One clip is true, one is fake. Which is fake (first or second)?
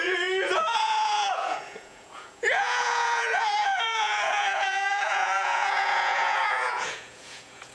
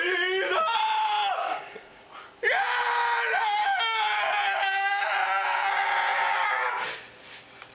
first